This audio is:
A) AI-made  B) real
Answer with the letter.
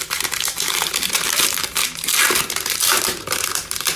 A